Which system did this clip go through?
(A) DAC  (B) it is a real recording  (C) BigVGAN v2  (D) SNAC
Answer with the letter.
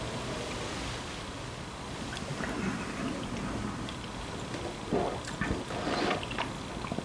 B